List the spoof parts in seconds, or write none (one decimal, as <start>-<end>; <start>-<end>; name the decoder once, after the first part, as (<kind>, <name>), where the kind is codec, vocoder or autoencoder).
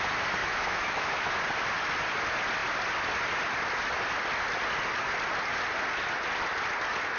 0.4-1.3 (autoencoder, DAC-VAE)